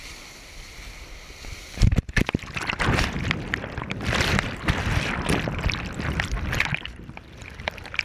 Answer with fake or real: fake